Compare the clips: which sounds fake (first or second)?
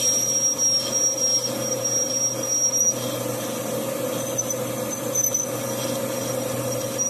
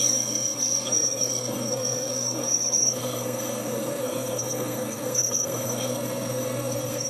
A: second